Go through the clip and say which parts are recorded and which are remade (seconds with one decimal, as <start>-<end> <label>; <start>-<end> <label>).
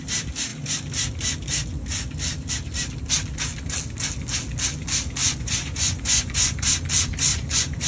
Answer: 0.0-5.2 recorded; 5.2-6.7 remade; 6.7-7.3 recorded; 7.3-7.9 remade